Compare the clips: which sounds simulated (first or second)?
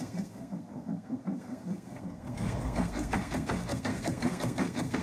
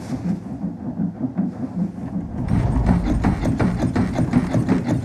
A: first